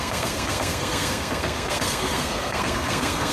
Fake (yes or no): yes